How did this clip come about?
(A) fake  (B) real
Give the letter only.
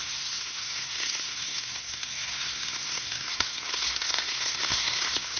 A